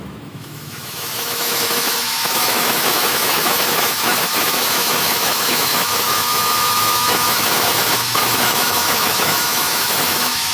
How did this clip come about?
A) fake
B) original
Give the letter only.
A